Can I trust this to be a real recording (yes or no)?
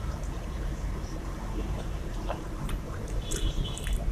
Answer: no